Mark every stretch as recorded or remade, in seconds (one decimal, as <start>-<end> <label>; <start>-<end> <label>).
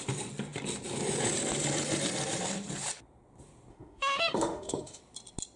0.0-3.7 recorded; 3.7-5.0 remade; 5.0-5.6 recorded